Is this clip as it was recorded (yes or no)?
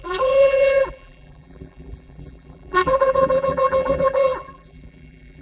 no